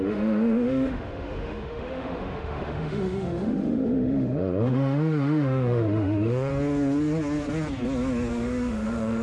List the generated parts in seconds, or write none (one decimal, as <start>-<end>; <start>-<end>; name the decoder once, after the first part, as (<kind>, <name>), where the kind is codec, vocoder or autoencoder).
0.0-6.5 (autoencoder, DAC-VAE); 8.3-9.2